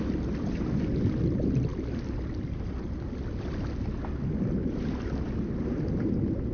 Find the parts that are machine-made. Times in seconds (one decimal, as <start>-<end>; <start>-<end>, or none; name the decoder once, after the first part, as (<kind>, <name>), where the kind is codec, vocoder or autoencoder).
none